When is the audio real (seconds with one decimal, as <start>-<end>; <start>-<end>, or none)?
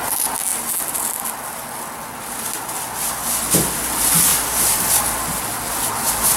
0.0-6.4